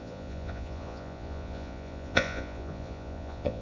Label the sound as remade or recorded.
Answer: remade